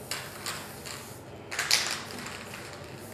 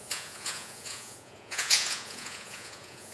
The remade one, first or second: second